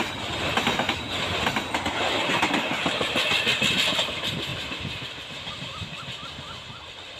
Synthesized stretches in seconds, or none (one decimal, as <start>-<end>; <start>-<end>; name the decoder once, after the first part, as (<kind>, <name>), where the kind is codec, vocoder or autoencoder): none